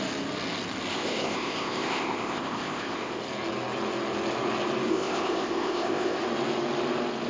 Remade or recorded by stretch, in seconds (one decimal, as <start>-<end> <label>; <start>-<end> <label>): 0.0-0.9 recorded; 0.9-3.2 remade; 3.2-4.9 recorded; 4.9-6.2 remade; 6.2-7.3 recorded